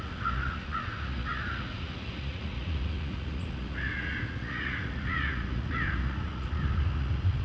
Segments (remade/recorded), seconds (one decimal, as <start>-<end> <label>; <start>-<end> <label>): 0.0-7.4 remade